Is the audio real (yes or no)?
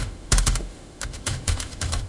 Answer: no